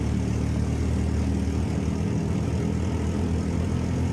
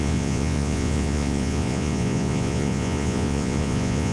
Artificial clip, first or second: second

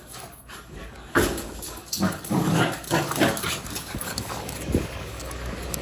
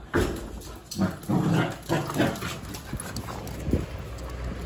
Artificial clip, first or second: first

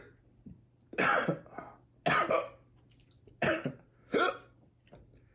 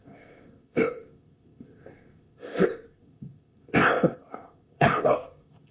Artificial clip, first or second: second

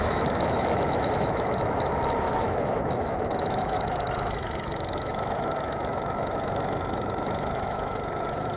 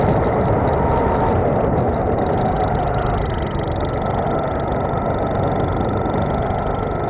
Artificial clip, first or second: first